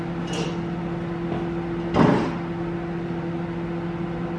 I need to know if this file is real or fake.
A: real